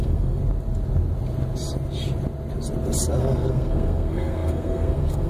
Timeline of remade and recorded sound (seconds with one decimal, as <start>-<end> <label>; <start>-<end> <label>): 0.0-0.4 remade; 0.4-3.2 recorded; 3.2-5.3 remade